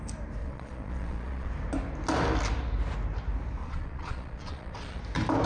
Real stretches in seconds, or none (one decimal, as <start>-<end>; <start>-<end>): 0.0-0.4; 1.5-3.6; 5.0-5.5